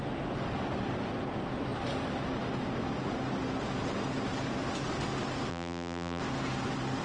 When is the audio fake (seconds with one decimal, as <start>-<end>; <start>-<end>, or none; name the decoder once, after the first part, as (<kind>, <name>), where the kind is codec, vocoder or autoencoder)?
5.5-6.2 (vocoder, BigVGAN v2)